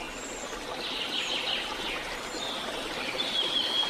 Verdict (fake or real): real